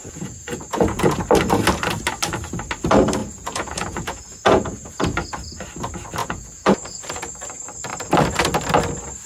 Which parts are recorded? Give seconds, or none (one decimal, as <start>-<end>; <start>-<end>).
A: 1.2-3.2; 4.9-6.2; 7.3-9.3